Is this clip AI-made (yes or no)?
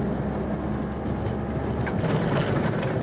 no